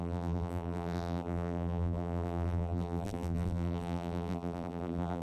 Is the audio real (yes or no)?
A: no